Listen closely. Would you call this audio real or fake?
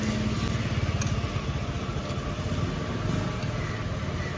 real